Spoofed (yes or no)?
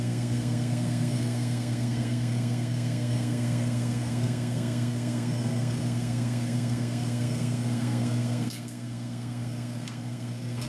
yes